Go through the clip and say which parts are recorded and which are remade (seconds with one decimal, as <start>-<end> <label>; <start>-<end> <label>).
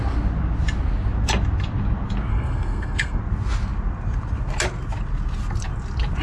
0.0-2.3 recorded; 2.3-3.2 remade; 3.2-6.2 recorded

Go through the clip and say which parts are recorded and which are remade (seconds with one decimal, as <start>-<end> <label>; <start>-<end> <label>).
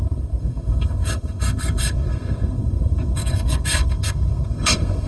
0.0-5.1 remade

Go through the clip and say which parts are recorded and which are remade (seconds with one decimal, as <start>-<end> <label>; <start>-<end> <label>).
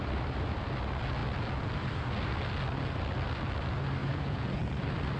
0.0-4.0 recorded; 4.0-4.7 remade; 4.7-5.2 recorded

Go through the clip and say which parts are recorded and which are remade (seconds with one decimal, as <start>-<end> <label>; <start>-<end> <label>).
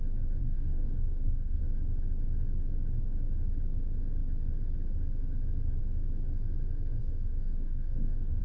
0.0-0.4 recorded; 0.4-1.6 remade; 1.6-7.0 recorded; 7.0-8.4 remade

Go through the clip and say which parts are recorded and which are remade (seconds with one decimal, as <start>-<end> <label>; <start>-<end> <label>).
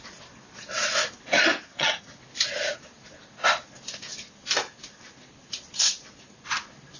0.0-1.7 recorded; 1.7-2.2 remade; 2.2-7.0 recorded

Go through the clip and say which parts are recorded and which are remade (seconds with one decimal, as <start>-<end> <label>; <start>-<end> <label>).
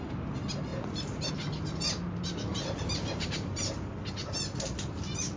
0.0-0.7 recorded; 0.7-1.3 remade; 1.3-2.5 recorded; 2.5-3.7 remade; 3.7-5.4 recorded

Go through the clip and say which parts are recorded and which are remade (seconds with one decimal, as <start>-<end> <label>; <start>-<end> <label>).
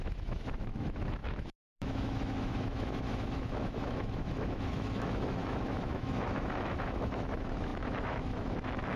0.0-9.0 remade